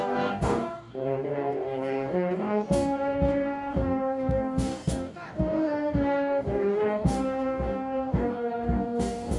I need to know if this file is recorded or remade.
remade